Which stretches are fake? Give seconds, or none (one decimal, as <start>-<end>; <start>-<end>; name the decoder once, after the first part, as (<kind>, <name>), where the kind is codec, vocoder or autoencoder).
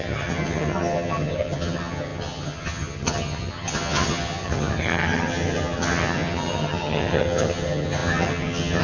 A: 0.0-8.8 (vocoder, HiFi-GAN)